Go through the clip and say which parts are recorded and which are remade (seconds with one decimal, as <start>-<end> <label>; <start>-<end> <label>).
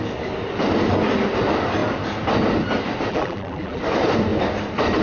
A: 0.0-3.1 recorded; 3.1-3.8 remade; 3.8-5.0 recorded